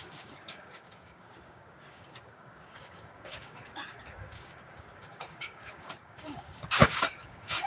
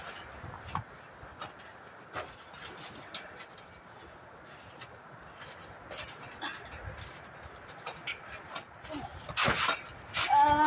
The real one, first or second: second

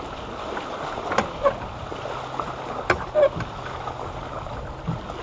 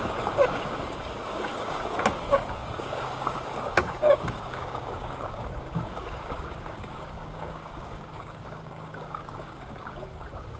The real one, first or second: first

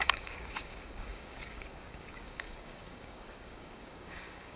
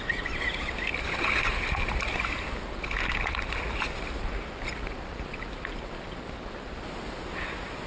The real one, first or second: second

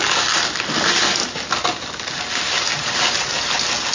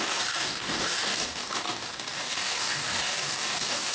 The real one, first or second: first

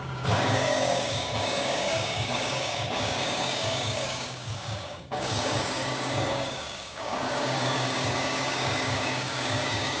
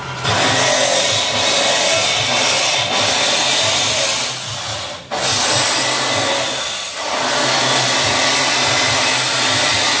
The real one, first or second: second